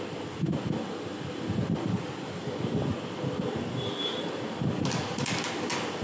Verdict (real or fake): real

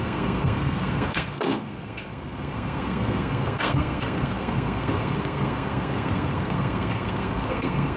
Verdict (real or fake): fake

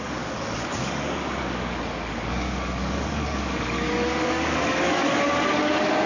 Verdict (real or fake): fake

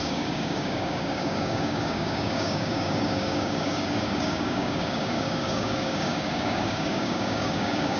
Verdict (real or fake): fake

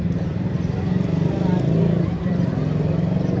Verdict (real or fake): real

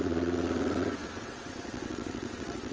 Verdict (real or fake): fake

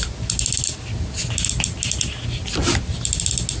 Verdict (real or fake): real